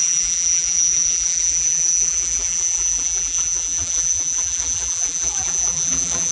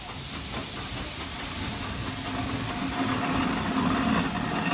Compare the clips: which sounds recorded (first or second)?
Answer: second